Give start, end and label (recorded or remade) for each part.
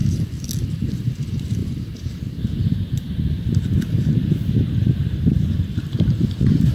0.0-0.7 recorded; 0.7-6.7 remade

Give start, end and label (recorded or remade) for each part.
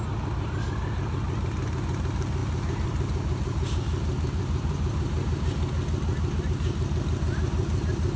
0.0-2.4 recorded; 2.4-6.4 remade; 6.4-8.2 recorded